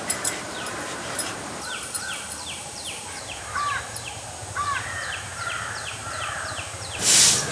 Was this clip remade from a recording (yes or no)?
yes